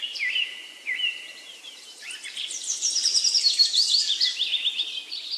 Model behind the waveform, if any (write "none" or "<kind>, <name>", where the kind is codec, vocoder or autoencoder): vocoder, BigVGAN v2